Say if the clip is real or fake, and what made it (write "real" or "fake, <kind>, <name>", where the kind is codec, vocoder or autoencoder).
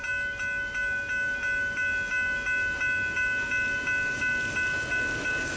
real